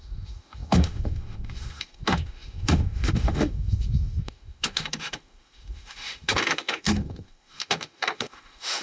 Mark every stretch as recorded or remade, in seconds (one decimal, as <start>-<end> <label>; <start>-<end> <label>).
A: 0.0-8.8 remade